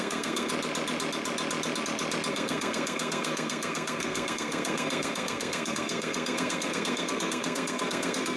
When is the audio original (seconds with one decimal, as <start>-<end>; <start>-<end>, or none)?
0.5-2.3